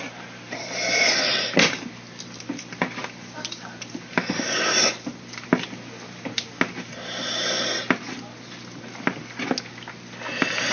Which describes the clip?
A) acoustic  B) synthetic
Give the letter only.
A